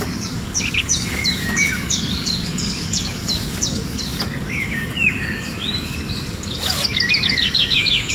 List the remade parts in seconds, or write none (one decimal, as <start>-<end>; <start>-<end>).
0.0-8.1